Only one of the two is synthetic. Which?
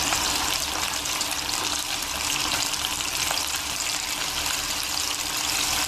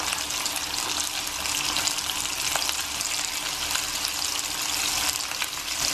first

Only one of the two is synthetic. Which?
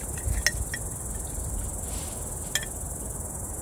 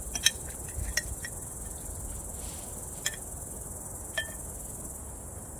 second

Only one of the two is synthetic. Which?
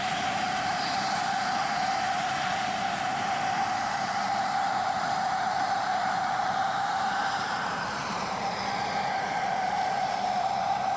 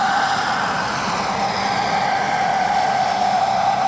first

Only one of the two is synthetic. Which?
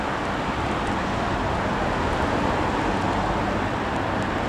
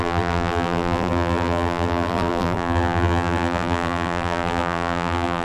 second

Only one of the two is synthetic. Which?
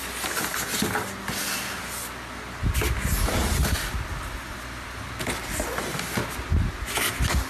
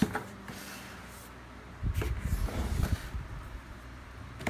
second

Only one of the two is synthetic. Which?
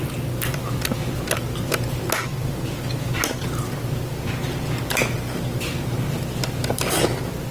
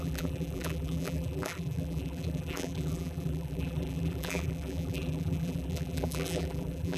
second